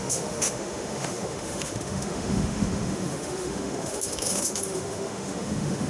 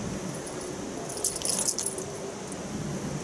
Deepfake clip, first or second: first